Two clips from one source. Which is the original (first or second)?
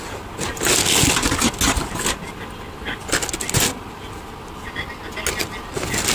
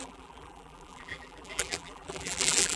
first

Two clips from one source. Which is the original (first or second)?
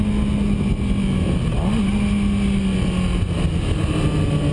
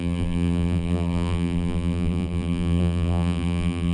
first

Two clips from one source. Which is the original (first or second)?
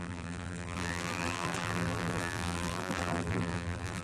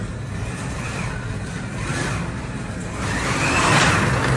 second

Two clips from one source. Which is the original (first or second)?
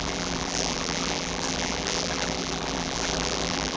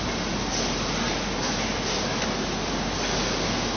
second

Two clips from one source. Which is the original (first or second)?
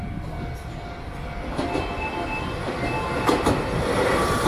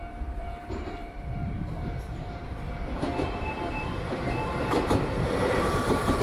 first